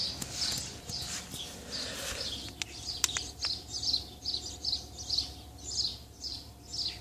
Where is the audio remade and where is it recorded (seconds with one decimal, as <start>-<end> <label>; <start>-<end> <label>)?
0.0-5.9 recorded; 5.9-6.5 remade; 6.5-7.0 recorded